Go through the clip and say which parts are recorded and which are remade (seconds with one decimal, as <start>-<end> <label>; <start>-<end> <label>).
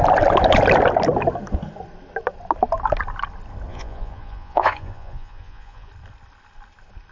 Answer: 0.0-3.7 recorded; 3.7-5.9 remade; 5.9-7.1 recorded